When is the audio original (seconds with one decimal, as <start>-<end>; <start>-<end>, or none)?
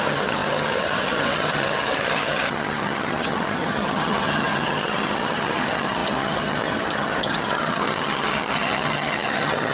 none